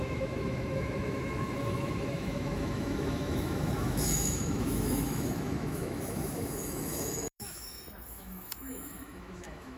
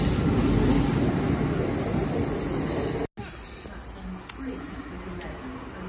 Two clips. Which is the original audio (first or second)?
second